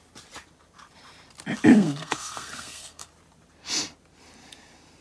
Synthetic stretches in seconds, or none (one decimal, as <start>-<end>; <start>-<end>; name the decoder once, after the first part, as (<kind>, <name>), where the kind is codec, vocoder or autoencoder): 1.7-3.1 (codec, SNAC)